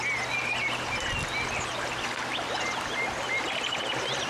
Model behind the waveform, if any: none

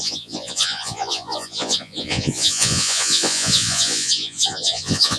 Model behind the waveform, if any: vocoder, Vocos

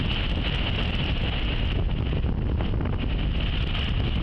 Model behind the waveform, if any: none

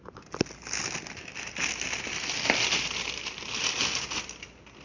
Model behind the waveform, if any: none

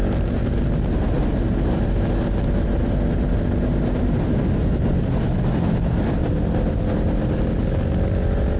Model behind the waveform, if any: none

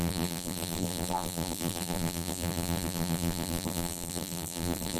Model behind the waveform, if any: vocoder, BigVGAN v2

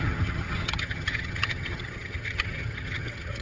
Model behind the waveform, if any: vocoder, HiFi-GAN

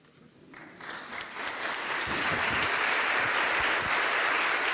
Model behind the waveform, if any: none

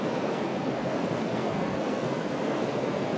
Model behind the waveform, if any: codec, SNAC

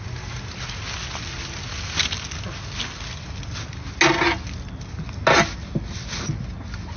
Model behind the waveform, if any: none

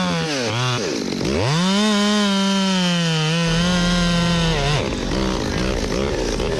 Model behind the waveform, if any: none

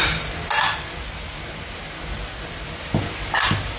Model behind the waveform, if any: none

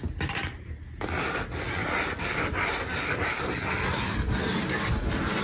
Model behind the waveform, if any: none